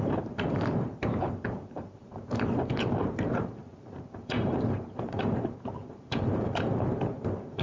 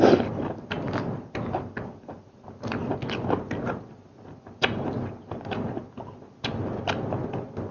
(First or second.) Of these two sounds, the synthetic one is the first